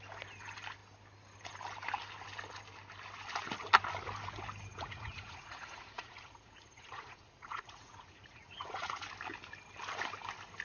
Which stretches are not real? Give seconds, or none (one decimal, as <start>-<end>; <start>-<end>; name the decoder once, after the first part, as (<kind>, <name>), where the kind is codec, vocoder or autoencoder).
4.7-9.0 (vocoder, Vocos)